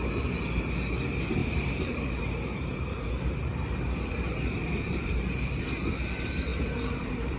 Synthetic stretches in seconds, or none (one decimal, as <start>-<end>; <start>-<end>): 1.4-5.6; 6.5-7.4

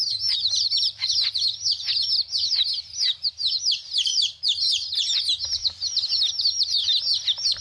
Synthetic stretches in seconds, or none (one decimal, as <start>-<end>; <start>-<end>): 0.0-5.8; 6.4-7.6

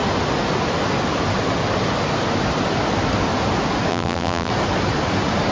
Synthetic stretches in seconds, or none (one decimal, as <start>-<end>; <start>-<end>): 3.9-4.5

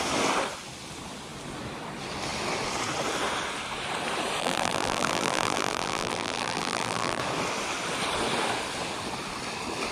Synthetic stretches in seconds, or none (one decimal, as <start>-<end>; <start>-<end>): 4.4-7.2

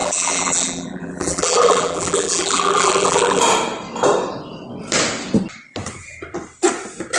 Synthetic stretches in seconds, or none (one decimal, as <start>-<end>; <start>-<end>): 0.0-3.4

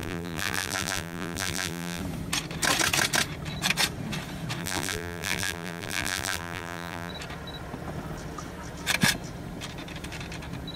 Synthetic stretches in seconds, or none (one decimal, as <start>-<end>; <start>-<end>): 0.0-2.0; 4.6-7.1